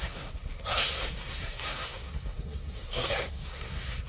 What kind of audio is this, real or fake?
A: fake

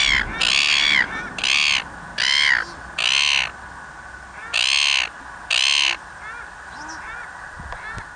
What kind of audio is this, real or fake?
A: real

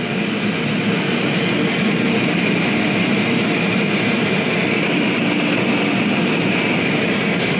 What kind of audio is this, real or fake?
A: real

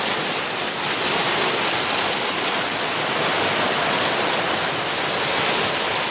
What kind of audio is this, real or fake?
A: real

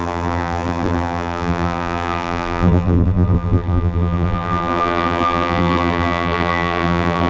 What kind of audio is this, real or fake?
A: fake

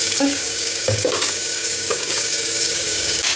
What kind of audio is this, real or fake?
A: fake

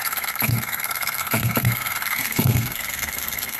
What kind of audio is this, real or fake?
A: fake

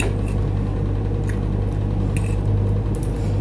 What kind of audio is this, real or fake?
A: real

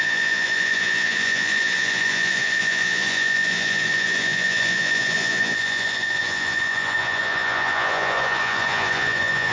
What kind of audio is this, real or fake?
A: fake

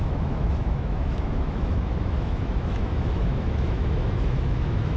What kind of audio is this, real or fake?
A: fake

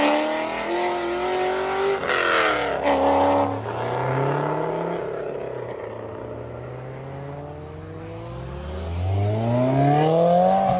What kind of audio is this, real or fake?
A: real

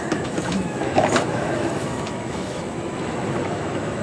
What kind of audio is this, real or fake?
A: fake